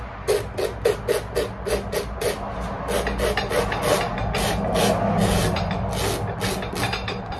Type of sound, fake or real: real